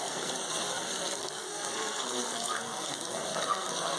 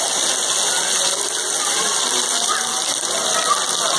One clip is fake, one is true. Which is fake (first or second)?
first